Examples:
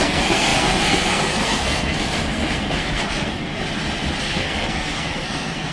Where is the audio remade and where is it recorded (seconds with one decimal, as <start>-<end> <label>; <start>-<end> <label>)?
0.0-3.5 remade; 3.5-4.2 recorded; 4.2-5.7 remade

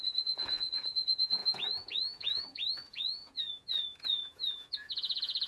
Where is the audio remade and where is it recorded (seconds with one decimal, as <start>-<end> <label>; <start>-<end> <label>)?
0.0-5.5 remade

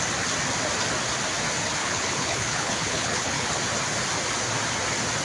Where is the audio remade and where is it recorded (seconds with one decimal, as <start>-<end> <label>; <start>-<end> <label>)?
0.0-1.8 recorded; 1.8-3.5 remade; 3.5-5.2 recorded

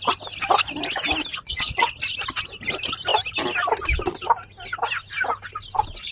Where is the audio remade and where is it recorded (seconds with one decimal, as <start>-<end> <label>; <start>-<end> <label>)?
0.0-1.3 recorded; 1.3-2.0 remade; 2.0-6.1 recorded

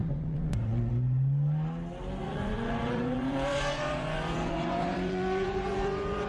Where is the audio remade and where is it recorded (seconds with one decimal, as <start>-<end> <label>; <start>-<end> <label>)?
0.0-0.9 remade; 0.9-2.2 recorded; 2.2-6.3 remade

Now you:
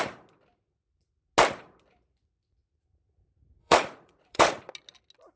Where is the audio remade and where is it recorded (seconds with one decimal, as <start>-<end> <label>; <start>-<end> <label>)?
0.0-3.6 recorded; 3.6-4.6 remade; 4.6-5.4 recorded

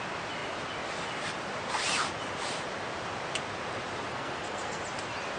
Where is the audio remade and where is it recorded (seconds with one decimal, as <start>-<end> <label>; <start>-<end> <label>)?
0.0-4.1 recorded; 4.1-4.8 remade; 4.8-5.4 recorded